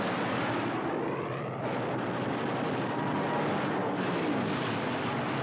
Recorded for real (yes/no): yes